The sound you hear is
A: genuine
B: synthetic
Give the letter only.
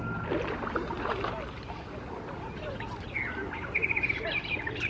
A